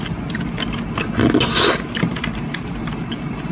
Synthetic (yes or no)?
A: no